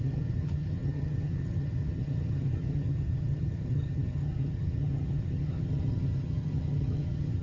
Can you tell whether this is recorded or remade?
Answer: remade